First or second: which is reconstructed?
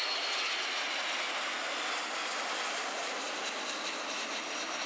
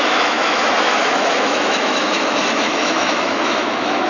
second